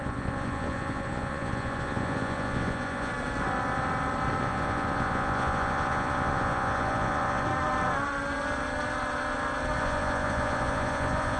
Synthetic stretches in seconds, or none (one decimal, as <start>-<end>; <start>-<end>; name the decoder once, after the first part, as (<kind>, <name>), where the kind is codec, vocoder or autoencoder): 0.0-3.1 (vocoder, Vocos); 4.4-7.5; 9.8-11.4